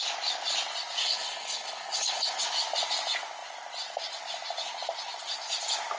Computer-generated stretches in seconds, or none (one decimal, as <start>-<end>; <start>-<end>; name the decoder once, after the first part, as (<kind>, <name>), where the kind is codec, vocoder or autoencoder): 1.0-2.4 (codec, HILCodec)